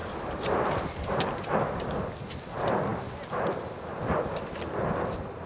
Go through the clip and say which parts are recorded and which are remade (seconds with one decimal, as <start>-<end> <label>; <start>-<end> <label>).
0.0-5.5 recorded